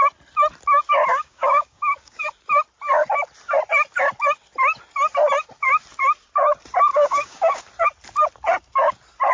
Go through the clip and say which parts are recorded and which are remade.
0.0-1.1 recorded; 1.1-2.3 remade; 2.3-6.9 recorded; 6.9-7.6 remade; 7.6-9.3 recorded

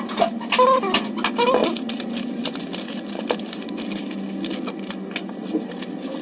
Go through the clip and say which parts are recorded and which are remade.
0.0-6.2 recorded